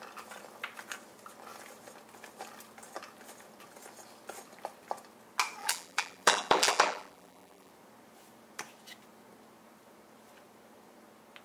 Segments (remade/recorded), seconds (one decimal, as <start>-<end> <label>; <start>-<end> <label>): 0.0-5.6 recorded; 5.6-7.7 remade; 7.7-11.4 recorded